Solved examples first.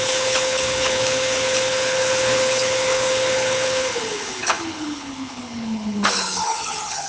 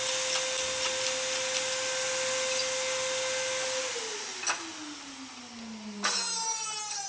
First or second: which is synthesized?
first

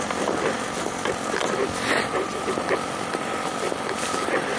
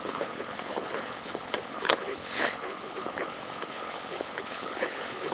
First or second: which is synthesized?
second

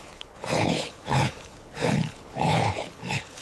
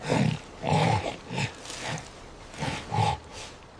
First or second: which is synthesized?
first